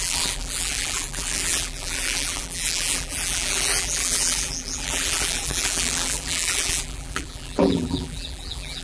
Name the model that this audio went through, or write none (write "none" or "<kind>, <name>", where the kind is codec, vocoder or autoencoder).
vocoder, BigVGAN v2